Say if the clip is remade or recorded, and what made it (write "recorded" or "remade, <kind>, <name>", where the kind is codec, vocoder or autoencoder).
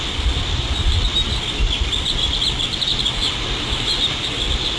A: recorded